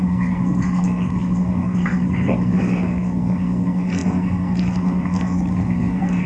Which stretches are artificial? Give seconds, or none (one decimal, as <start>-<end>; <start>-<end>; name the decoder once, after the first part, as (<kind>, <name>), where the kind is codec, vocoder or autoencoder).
0.0-6.3 (codec, SNAC)